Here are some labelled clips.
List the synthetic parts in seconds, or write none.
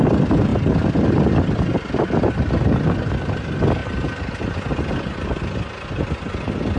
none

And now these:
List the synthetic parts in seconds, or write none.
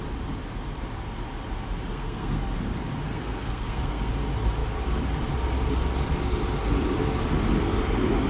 1.9-2.4 (codec, SNAC); 3.1-4.1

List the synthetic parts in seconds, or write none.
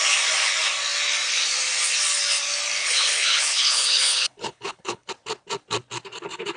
2.8-5.1 (codec, HILCodec)